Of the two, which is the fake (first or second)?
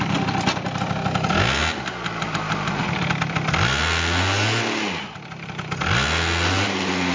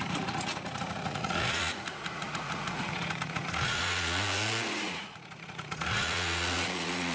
second